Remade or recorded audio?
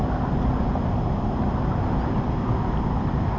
recorded